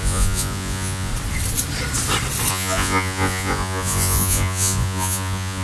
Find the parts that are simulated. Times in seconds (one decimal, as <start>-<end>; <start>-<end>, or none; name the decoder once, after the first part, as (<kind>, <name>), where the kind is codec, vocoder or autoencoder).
0.0-1.1 (vocoder, Vocos); 2.5-5.6

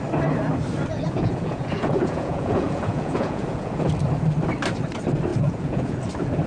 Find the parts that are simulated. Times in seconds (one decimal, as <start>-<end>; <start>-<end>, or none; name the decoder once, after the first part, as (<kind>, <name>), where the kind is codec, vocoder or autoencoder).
0.9-3.9 (vocoder, Vocos); 5.3-6.0